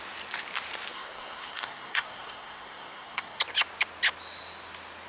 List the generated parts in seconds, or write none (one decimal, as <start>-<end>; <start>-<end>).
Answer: 0.9-3.4